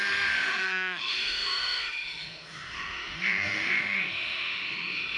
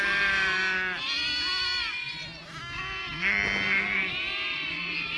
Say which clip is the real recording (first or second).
second